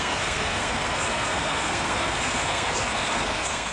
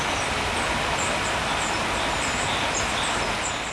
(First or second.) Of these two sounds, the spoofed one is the first